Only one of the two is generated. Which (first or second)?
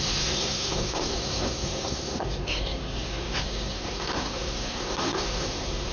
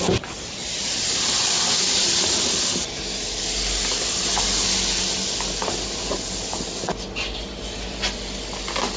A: first